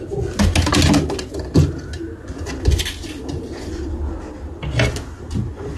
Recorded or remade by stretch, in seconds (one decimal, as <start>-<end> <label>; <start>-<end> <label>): 0.0-5.8 recorded